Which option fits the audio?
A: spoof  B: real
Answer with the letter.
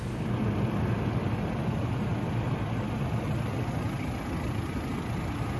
B